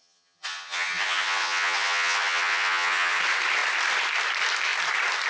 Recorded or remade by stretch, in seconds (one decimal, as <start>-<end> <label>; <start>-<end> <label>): 0.0-3.2 remade; 3.2-5.3 recorded